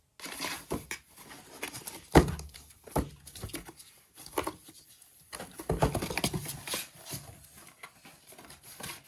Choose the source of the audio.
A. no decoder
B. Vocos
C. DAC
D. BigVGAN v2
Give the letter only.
A